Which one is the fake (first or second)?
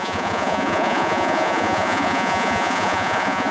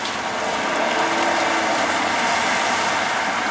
first